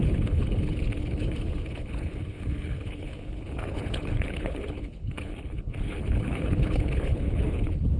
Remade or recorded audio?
remade